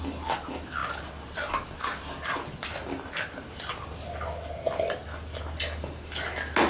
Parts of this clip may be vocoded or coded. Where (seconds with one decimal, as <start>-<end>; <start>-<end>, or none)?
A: none